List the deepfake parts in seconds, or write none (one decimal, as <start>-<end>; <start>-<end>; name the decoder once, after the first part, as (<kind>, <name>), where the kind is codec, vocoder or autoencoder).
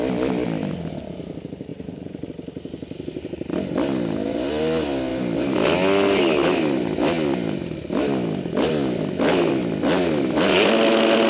1.7-2.3 (vocoder, Vocos)